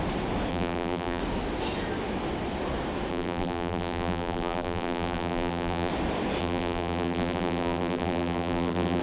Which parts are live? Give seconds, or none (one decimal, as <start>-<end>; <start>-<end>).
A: 0.0-0.5; 1.2-3.1; 5.9-6.4